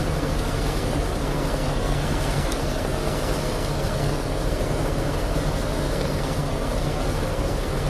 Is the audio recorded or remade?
remade